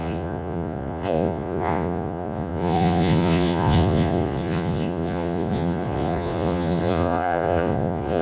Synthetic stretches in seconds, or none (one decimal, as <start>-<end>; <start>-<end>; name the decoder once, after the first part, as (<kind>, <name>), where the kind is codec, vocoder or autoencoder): 0.0-8.2 (vocoder, Vocos)